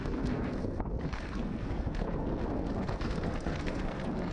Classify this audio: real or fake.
fake